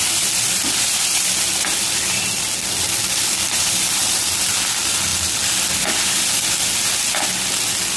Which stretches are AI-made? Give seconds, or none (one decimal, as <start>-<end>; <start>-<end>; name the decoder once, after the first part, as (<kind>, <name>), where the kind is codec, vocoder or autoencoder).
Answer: none